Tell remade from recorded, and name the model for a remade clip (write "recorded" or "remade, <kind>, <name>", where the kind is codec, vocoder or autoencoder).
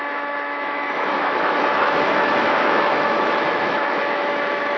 remade, autoencoder, DAC-VAE